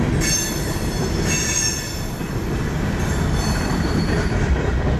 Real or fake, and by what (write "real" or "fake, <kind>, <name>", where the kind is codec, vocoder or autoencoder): real